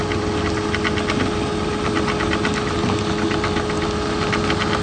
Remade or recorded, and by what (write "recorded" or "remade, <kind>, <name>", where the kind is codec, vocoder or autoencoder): recorded